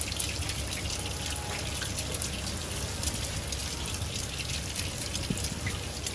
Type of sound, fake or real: real